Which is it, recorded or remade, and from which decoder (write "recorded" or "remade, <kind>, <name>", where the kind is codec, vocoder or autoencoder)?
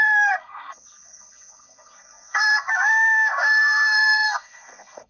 remade, codec, SNAC